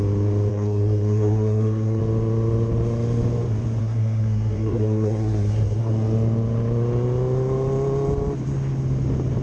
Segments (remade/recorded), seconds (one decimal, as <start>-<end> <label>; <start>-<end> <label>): 0.0-0.5 recorded; 0.5-2.0 remade; 2.0-3.8 recorded; 3.8-5.9 remade; 5.9-9.4 recorded